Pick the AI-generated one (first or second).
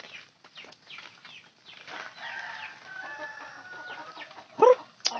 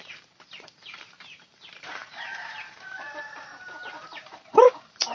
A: second